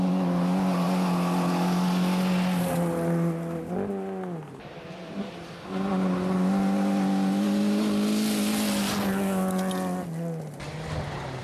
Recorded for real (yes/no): yes